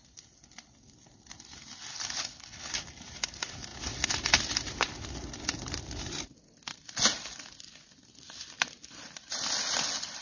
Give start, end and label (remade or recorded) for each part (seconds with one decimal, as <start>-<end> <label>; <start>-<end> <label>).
0.0-1.9 recorded; 1.9-2.7 remade; 2.7-10.2 recorded